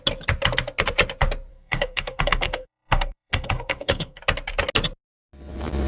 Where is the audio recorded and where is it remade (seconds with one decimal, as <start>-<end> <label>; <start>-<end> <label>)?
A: 0.0-1.5 recorded; 1.5-4.2 remade; 4.2-5.9 recorded